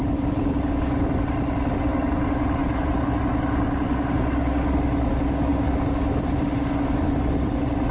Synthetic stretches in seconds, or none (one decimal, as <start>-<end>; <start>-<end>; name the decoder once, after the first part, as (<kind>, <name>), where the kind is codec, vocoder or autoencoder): 2.6-3.1 (vocoder, BigVGAN v2)